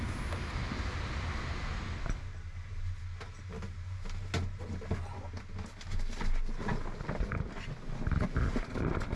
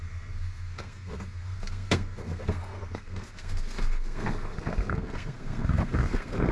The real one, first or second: first